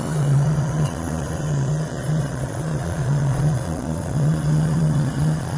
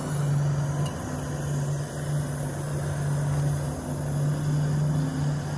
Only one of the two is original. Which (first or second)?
second